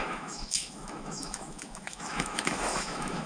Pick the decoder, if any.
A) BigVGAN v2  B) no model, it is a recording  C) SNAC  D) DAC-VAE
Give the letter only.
D